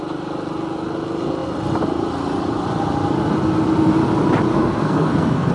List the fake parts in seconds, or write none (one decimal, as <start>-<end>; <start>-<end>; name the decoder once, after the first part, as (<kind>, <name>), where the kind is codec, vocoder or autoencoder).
4.5-5.5 (codec, SNAC)